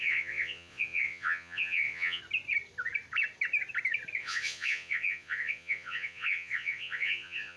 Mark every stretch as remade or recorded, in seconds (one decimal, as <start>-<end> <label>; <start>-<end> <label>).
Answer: 0.0-2.2 remade; 2.2-4.2 recorded; 4.2-7.6 remade